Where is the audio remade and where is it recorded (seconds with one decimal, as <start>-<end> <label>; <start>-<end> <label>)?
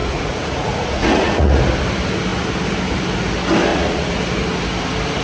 0.0-1.6 remade; 1.6-3.7 recorded; 3.7-4.2 remade; 4.2-5.2 recorded